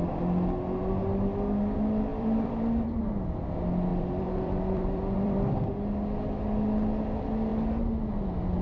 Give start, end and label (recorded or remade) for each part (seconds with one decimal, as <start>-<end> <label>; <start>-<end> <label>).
0.0-2.1 recorded; 2.1-3.0 remade; 3.0-3.9 recorded; 3.9-5.7 remade; 5.7-8.6 recorded